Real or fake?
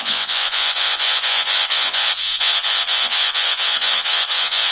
fake